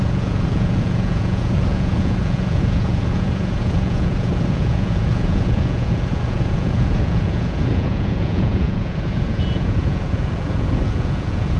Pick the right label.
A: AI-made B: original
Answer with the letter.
A